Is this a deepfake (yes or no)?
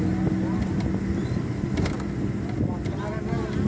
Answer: no